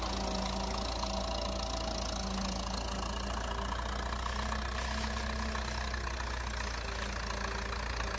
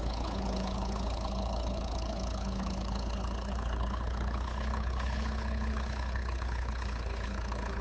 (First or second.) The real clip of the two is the first